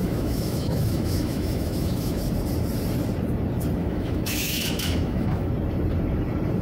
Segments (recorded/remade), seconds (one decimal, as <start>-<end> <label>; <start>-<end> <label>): 0.0-2.2 remade; 2.2-3.8 recorded; 3.8-5.5 remade; 5.5-6.6 recorded